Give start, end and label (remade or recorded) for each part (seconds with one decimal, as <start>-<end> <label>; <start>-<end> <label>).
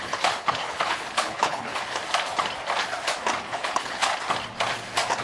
0.0-2.0 remade; 2.0-3.4 recorded; 3.4-4.1 remade; 4.1-5.2 recorded